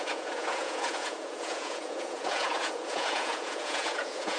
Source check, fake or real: fake